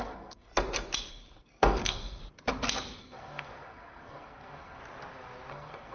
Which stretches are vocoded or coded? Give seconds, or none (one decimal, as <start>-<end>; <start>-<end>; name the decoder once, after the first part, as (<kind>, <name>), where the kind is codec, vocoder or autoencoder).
0.0-0.5 (codec, SNAC); 1.1-2.2; 3.0-4.8; 5.5-5.9